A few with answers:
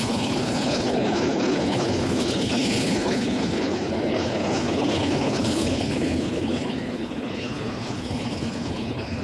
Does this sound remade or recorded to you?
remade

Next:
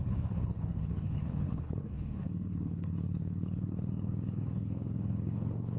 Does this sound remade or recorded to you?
remade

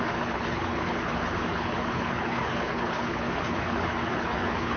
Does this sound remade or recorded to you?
remade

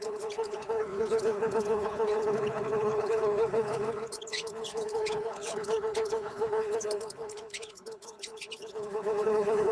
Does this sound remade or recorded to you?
remade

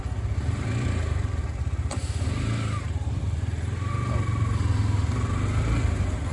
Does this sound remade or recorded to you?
recorded